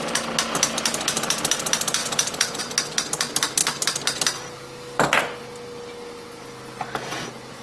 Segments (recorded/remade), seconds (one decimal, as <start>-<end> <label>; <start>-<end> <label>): 0.0-2.0 recorded; 2.0-2.6 remade; 2.6-7.6 recorded